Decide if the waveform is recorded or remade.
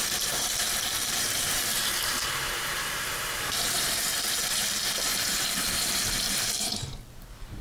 remade